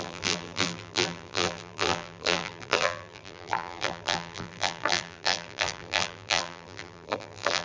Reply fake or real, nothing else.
fake